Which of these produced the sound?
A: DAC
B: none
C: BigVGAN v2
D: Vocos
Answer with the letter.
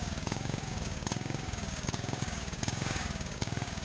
A